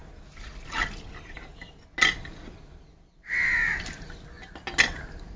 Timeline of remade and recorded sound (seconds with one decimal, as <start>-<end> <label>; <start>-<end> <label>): 0.0-5.4 recorded